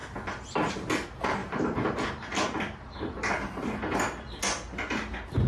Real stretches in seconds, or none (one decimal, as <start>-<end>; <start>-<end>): 0.0-1.4; 3.6-5.5